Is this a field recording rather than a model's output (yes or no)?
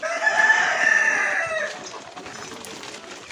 yes